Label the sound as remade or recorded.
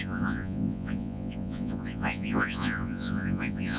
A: remade